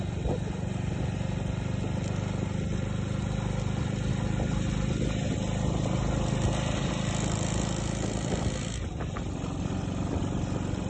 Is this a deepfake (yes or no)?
no